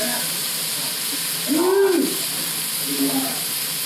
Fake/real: real